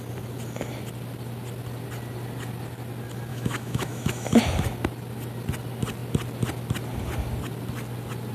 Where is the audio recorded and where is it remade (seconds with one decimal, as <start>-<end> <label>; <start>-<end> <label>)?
0.0-3.3 recorded; 3.3-4.4 remade; 4.4-8.3 recorded